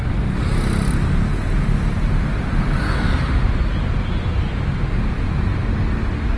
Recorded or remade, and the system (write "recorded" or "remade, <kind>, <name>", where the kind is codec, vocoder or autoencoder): recorded